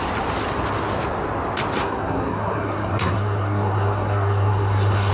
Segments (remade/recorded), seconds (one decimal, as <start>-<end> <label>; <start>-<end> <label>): 0.0-1.8 recorded; 1.8-5.1 remade